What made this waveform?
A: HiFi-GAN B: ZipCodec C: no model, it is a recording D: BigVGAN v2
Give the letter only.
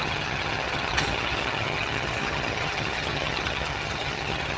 A